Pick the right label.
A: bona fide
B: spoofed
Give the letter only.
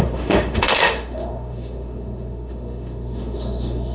B